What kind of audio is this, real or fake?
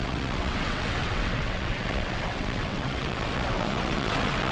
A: fake